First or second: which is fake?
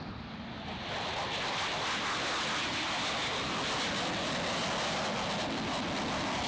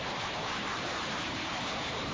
second